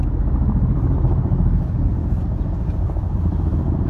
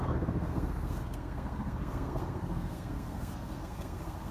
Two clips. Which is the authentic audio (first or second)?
first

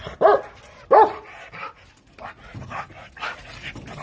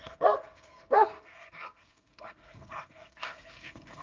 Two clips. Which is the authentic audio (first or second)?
first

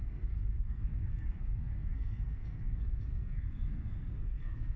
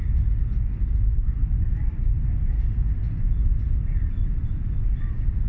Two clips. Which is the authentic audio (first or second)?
second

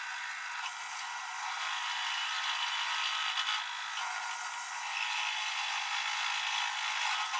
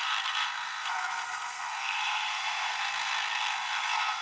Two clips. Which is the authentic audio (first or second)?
first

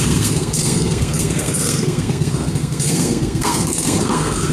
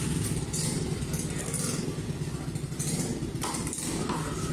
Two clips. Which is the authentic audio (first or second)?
second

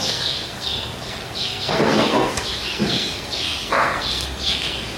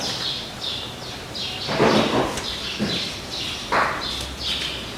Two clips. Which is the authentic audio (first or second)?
second